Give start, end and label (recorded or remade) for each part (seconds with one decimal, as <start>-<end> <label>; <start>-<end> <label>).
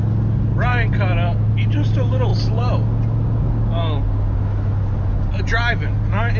0.0-6.4 recorded